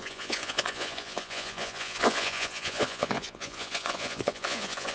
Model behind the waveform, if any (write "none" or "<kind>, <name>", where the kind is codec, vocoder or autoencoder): vocoder, Vocos